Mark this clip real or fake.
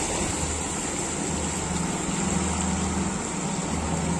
real